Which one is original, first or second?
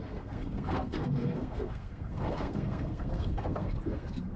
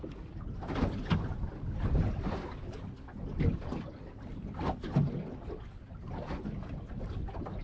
second